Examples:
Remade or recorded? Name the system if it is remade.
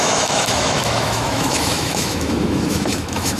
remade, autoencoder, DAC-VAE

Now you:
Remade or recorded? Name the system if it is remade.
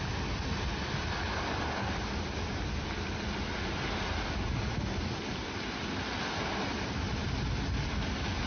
recorded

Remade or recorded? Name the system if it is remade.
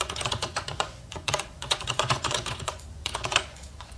remade, vocoder, Vocos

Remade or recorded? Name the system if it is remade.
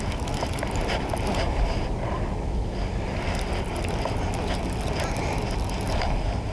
recorded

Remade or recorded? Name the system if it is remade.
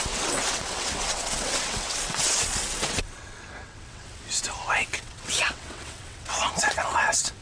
remade, vocoder, WaveNeXt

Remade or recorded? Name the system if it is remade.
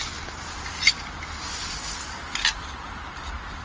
recorded